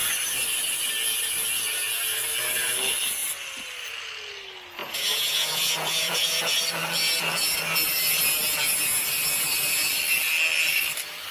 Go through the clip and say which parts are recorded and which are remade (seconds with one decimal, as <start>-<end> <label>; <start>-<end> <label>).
0.0-4.8 recorded; 4.8-6.6 remade; 6.6-11.3 recorded